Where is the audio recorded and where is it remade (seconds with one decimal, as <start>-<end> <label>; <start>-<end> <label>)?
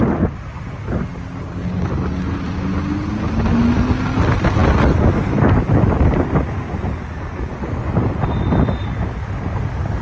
0.0-10.0 recorded